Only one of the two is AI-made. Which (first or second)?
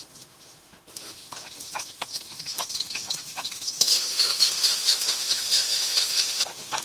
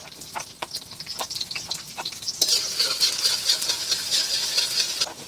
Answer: first